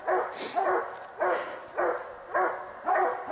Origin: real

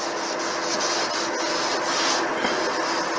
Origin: real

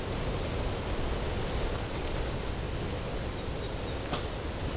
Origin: real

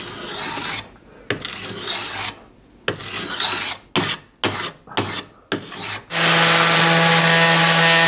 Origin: real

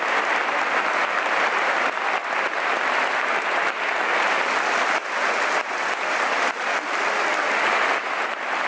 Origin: real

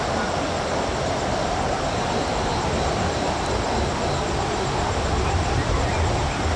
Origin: real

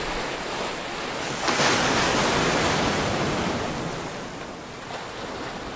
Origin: real